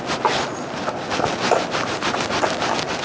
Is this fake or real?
real